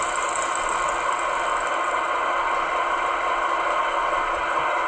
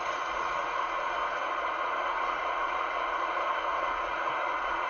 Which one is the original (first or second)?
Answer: first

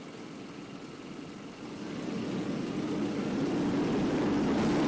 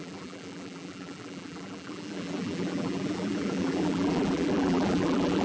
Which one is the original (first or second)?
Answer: first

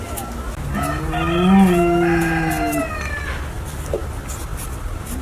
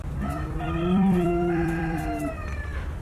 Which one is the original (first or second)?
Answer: first